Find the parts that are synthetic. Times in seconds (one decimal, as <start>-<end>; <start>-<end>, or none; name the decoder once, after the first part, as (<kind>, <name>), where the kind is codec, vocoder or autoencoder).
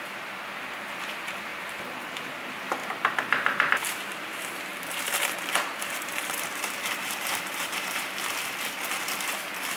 2.8-4.3 (vocoder, BigVGAN v2); 4.7-8.1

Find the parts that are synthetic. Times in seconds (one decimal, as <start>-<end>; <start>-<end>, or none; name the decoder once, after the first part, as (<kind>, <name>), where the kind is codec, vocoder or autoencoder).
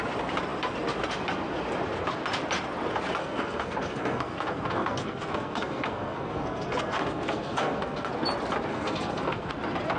3.2-8.1 (codec, SNAC); 8.7-9.5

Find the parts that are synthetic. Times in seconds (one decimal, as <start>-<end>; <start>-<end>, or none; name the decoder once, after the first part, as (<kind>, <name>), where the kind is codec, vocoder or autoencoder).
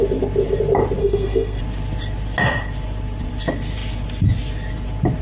1.0-1.6 (codec, SNAC)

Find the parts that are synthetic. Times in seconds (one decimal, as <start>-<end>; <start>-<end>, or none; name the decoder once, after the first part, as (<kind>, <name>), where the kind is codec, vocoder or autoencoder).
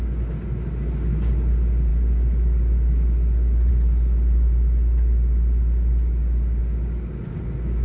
none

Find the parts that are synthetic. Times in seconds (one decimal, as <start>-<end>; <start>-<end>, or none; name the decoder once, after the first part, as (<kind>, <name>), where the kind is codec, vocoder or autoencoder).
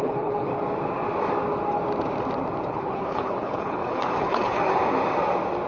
0.0-0.5 (codec, HILCodec); 2.7-4.7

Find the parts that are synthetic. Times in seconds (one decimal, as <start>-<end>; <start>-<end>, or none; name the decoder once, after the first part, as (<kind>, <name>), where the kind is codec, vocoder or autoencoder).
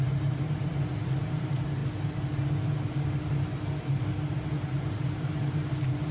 0.0-1.8 (vocoder, BigVGAN v2); 4.3-6.1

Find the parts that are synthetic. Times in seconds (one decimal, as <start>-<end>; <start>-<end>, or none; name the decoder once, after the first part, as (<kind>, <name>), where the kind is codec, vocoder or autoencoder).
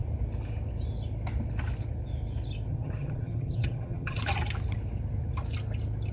2.7-4.2 (vocoder, HiFi-GAN)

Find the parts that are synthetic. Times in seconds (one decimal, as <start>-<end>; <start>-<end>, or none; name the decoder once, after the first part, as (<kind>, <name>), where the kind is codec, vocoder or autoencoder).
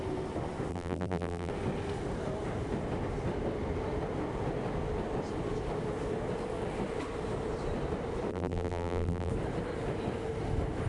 0.7-1.5 (vocoder, BigVGAN v2); 8.3-9.3